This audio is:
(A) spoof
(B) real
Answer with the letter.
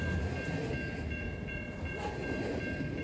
B